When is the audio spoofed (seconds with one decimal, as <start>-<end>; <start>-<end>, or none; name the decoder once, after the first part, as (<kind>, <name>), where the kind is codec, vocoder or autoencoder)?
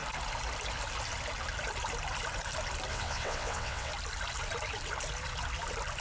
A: 2.9-3.9 (vocoder, WaveNeXt)